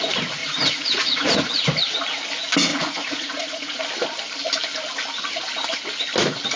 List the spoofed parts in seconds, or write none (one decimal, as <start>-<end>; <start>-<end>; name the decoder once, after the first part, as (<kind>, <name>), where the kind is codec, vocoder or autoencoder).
0.4-1.6 (vocoder, Vocos); 2.7-3.8